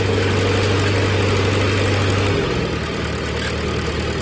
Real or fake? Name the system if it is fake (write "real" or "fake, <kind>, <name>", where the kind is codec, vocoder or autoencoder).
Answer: real